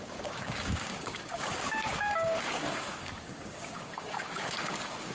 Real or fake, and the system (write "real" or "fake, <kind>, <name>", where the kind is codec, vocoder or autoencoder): fake, codec, DAC